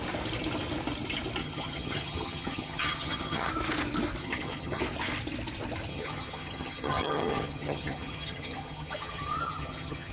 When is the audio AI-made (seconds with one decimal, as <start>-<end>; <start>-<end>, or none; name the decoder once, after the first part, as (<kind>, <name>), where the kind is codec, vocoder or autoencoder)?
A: 1.4-3.5 (vocoder, HiFi-GAN); 4.2-4.8; 5.9-10.1